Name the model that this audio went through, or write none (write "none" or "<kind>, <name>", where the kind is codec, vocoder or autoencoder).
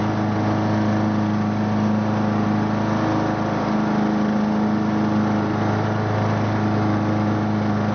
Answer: none